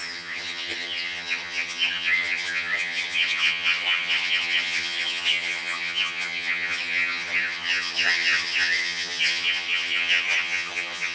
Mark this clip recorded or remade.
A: remade